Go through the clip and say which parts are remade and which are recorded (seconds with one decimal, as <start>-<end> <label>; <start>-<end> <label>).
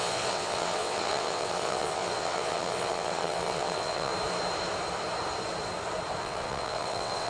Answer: 0.0-4.1 remade; 4.1-6.2 recorded; 6.2-7.3 remade